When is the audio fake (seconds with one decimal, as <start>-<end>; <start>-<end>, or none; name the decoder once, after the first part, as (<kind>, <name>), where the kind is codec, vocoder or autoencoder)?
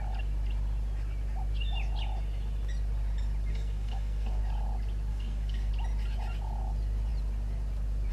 3.5-4.4 (codec, SNAC); 5.1-5.7